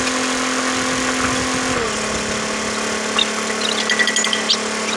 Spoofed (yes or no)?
no